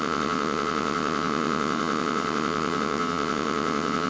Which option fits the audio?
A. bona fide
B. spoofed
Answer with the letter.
B